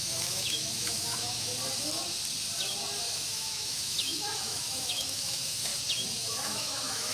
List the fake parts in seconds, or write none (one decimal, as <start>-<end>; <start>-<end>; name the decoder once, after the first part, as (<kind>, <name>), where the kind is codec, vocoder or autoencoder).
0.0-1.5 (autoencoder, DAC-VAE); 3.0-5.7; 6.2-7.1